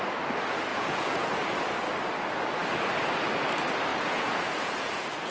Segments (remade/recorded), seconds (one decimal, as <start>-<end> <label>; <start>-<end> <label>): 0.0-0.7 recorded; 0.7-1.3 remade; 1.3-3.9 recorded; 3.9-5.3 remade